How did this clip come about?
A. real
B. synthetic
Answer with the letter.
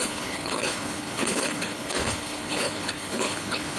B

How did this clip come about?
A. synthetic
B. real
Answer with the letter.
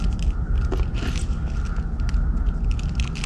B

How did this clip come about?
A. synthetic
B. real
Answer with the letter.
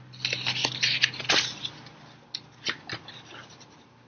B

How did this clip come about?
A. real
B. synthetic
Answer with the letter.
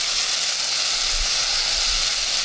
A